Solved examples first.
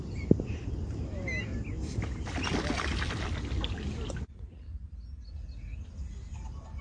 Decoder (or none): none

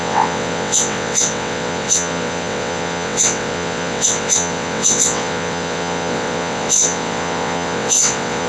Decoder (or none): vocoder, WaveNeXt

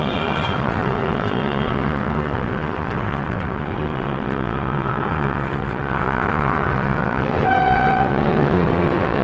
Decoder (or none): vocoder, WaveNeXt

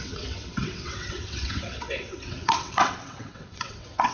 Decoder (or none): vocoder, WaveNeXt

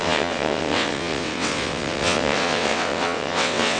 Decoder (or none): vocoder, WaveNeXt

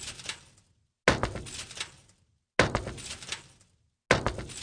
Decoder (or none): none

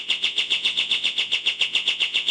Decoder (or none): vocoder, WaveNeXt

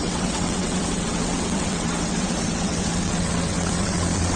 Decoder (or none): vocoder, WaveNeXt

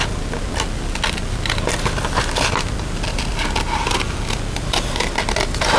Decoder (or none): none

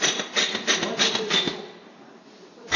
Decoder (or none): none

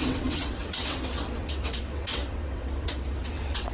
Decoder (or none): vocoder, WaveNeXt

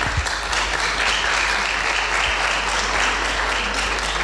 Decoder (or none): none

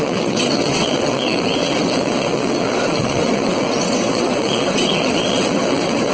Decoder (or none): vocoder, WaveNeXt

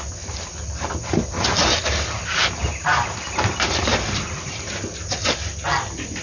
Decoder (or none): none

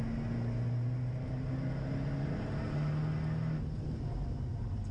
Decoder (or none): none